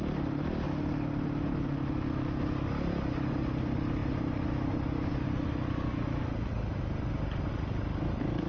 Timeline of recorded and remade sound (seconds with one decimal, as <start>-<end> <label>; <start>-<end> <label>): 0.0-8.5 recorded